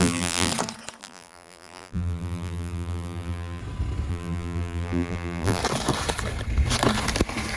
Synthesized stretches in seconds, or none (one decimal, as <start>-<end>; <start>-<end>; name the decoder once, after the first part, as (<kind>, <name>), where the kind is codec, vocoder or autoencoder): 0.0-0.5 (vocoder, BigVGAN v2); 1.0-3.6; 4.1-5.6